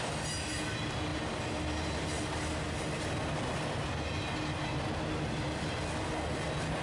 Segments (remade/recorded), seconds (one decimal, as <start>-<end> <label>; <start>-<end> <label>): 0.0-6.8 recorded